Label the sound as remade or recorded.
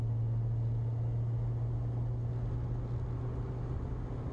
recorded